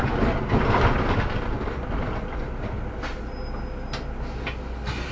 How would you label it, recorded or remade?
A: recorded